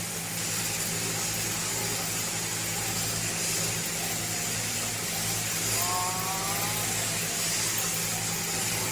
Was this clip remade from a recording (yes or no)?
no